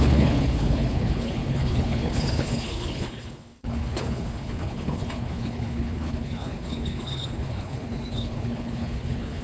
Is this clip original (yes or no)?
no